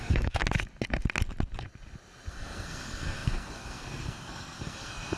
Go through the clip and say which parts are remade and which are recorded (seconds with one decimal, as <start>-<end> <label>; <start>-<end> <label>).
0.0-0.4 remade; 0.4-2.3 recorded; 2.3-5.2 remade